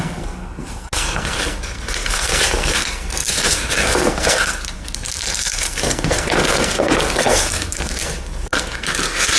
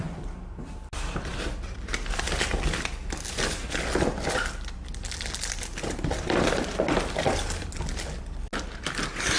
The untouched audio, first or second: second